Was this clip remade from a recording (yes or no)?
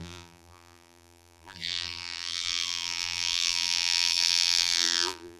yes